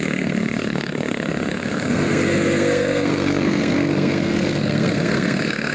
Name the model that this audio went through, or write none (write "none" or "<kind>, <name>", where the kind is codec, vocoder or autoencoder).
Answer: codec, SNAC